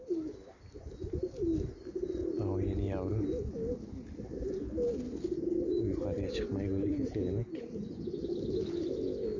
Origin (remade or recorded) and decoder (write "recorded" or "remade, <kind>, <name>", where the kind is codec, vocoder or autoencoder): recorded